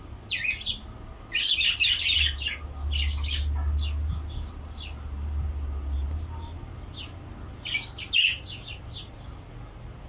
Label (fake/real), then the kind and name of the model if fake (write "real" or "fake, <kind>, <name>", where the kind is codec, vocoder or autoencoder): real